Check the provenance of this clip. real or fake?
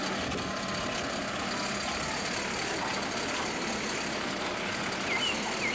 real